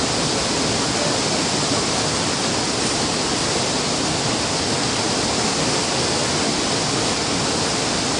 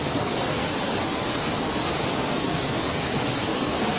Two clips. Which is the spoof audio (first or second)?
second